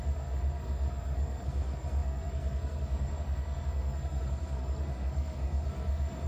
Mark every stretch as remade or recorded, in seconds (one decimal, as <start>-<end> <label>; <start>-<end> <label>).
0.0-6.3 remade

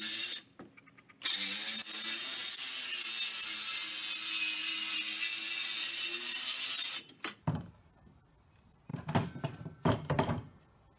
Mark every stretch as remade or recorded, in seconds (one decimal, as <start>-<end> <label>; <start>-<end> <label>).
0.0-11.0 recorded